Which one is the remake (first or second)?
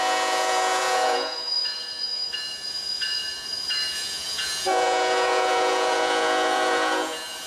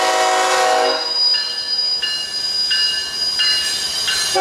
first